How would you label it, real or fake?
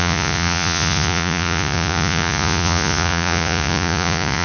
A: fake